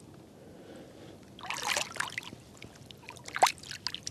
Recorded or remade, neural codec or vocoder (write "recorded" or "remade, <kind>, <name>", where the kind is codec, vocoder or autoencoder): recorded